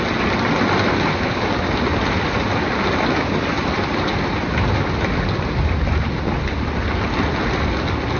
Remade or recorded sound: recorded